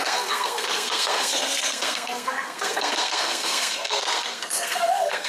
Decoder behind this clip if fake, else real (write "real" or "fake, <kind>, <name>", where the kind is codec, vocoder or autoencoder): fake, codec, SNAC